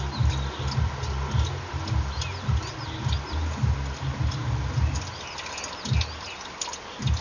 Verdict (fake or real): real